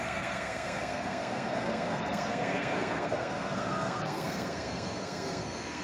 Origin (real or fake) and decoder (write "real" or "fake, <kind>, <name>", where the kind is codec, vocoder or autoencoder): fake, codec, SNAC